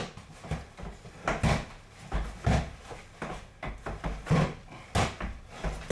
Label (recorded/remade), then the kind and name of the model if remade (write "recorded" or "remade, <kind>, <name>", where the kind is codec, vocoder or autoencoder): recorded